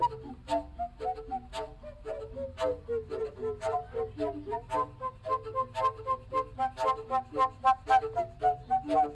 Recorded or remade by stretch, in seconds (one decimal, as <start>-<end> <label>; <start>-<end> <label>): 0.0-9.1 recorded